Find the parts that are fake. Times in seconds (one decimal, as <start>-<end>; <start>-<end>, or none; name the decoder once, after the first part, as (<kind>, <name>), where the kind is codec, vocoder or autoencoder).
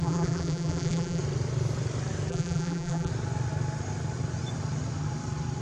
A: 0.0-1.2 (vocoder, BigVGAN v2); 2.3-3.1